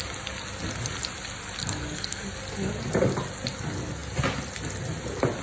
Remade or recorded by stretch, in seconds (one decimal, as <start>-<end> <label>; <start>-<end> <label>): 0.0-1.6 recorded; 1.6-2.2 remade; 2.2-5.4 recorded